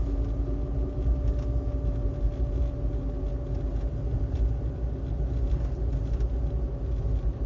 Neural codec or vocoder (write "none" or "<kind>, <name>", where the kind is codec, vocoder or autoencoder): none